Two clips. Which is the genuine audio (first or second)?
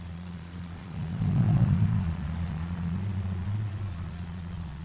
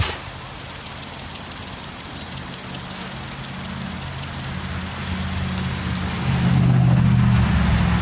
second